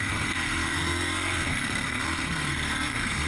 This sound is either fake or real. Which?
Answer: fake